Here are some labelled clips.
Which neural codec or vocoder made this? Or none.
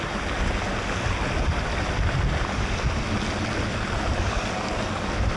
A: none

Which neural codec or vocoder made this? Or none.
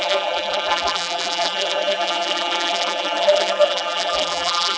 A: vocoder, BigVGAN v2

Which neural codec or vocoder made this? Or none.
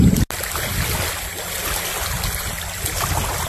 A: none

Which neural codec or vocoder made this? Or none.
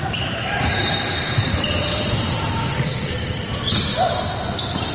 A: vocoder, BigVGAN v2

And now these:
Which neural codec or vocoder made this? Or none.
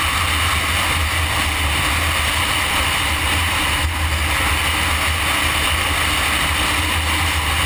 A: none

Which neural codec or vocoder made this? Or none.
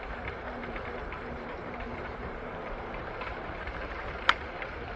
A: vocoder, BigVGAN v2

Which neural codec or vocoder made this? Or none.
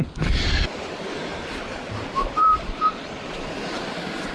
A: vocoder, BigVGAN v2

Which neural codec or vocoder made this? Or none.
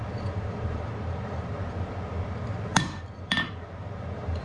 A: vocoder, BigVGAN v2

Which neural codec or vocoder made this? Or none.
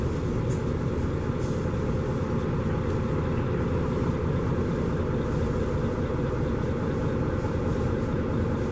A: none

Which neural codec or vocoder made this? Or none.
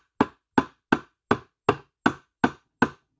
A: none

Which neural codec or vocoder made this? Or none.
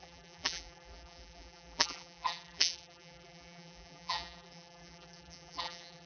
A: vocoder, BigVGAN v2